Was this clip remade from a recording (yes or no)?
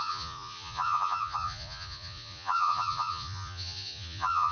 yes